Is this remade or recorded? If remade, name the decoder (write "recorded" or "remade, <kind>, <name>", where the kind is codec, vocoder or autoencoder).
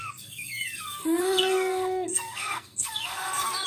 remade, codec, SNAC